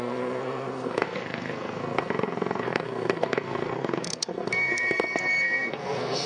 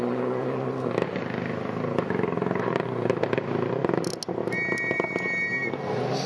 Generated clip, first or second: first